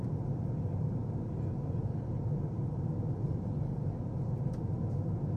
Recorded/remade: recorded